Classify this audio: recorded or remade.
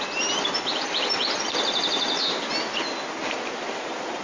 recorded